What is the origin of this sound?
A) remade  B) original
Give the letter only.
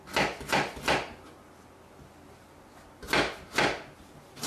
B